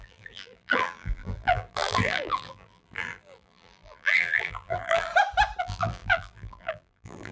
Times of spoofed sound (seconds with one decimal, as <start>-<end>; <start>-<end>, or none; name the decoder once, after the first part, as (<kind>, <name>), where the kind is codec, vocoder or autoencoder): 0.0-5.1 (vocoder, BigVGAN v2); 5.6-7.3